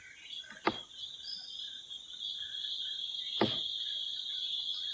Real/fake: real